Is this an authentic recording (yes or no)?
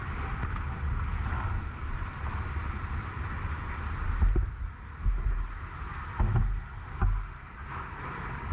yes